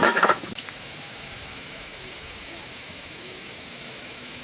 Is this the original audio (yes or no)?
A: no